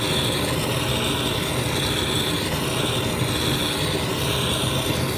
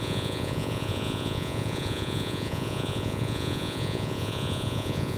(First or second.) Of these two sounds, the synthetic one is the second